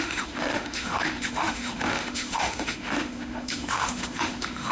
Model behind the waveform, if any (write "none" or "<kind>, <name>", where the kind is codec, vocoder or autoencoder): autoencoder, DAC-VAE